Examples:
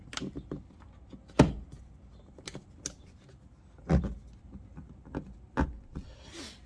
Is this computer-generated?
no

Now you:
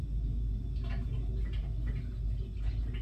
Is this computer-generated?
no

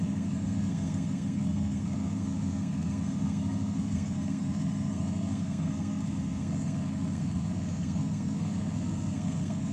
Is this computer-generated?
yes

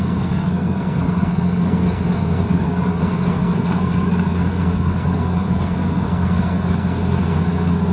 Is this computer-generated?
yes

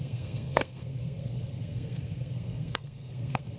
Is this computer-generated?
yes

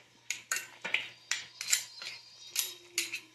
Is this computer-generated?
no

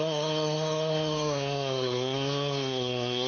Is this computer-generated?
yes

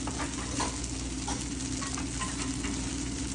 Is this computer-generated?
no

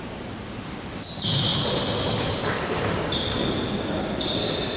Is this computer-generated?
no